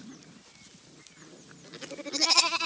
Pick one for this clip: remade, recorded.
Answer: recorded